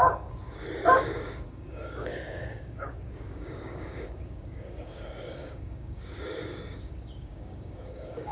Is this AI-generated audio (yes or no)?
yes